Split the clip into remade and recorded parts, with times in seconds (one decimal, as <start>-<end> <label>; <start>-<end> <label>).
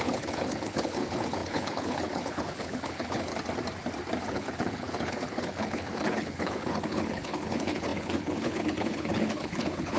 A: 0.0-3.3 remade; 3.3-4.2 recorded; 4.2-10.0 remade